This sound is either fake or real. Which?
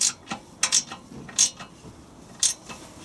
real